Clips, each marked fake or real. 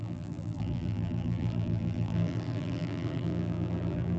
fake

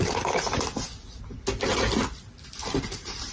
real